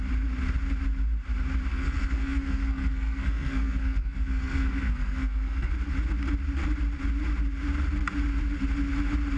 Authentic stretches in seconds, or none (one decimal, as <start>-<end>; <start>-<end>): 0.0-1.7; 5.7-9.4